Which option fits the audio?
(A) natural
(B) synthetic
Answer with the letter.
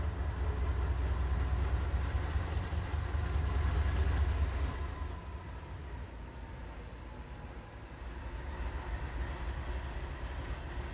A